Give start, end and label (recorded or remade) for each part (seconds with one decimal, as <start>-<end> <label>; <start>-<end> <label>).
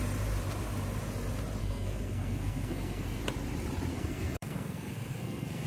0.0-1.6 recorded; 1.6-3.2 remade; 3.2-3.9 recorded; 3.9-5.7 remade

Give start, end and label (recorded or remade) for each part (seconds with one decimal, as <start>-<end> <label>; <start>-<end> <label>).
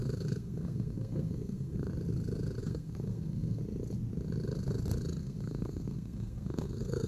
0.0-1.9 remade; 1.9-2.6 recorded; 2.6-3.6 remade; 3.6-5.2 recorded; 5.2-7.1 remade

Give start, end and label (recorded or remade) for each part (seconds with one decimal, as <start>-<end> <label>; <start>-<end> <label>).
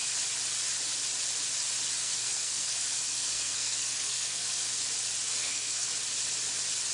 0.0-2.0 recorded; 2.0-4.8 remade; 4.8-5.3 recorded; 5.3-5.9 remade; 5.9-6.9 recorded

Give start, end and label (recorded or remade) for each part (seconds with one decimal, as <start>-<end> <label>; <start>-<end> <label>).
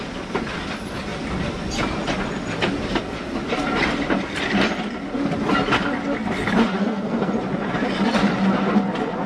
0.0-6.8 recorded; 6.8-7.3 remade; 7.3-9.3 recorded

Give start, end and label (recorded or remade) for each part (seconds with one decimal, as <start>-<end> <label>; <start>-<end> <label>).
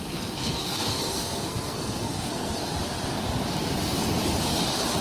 0.0-2.6 remade; 2.6-5.0 recorded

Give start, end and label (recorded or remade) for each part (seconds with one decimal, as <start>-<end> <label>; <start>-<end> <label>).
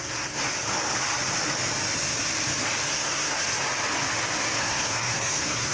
0.0-0.4 remade; 0.4-2.9 recorded; 2.9-3.4 remade; 3.4-4.6 recorded; 4.6-5.7 remade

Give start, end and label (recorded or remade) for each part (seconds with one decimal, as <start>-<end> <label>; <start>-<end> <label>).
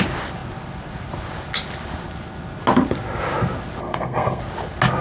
0.0-3.8 recorded; 3.8-4.4 remade; 4.4-5.0 recorded